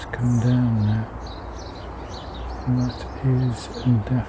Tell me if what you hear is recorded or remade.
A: recorded